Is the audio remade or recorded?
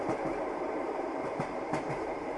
remade